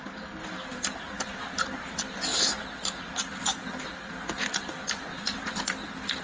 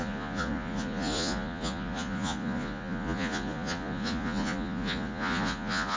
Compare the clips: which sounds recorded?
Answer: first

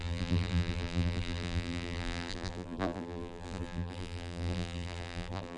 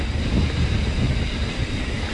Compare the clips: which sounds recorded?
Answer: second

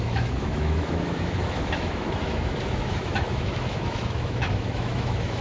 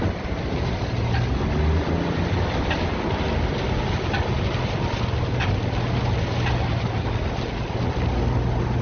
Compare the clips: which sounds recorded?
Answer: second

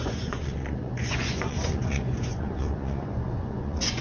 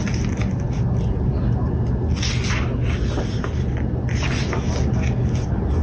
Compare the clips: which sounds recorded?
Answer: second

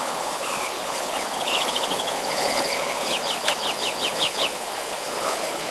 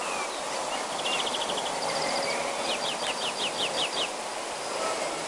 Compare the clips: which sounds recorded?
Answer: second